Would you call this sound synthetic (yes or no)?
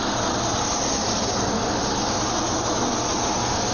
no